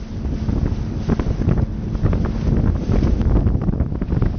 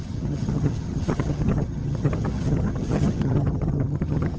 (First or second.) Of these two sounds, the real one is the first